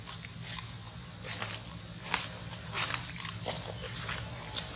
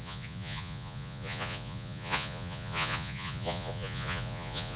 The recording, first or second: first